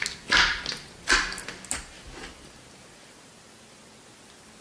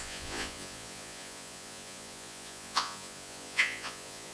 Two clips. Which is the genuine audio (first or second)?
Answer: first